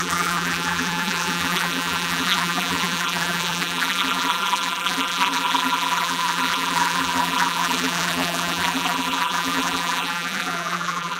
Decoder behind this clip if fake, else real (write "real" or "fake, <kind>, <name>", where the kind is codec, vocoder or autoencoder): fake, vocoder, BigVGAN v2